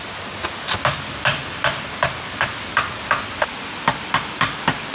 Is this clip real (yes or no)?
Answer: yes